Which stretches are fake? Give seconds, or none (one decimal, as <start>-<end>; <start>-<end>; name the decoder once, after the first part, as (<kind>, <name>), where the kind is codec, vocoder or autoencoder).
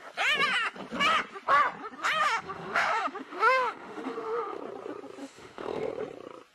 2.2-4.6 (autoencoder, DAC-VAE); 5.2-5.9